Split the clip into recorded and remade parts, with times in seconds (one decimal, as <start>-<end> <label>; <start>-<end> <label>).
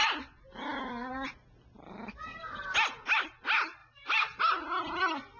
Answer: 0.0-3.8 recorded; 3.8-4.4 remade; 4.4-5.4 recorded